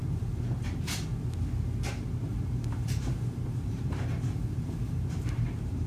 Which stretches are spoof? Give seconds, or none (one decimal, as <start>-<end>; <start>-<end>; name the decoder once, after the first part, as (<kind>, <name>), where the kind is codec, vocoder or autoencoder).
0.0-1.0 (vocoder, BigVGAN v2); 2.3-5.9